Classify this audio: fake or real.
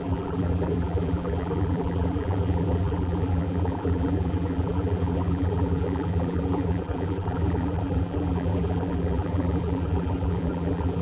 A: fake